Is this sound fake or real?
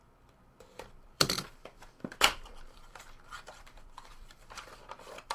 fake